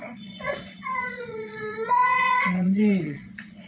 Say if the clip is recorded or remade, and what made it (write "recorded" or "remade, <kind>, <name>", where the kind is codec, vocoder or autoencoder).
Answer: remade, vocoder, Vocos